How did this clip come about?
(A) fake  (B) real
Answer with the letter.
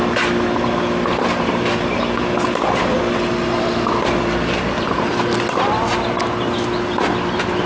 B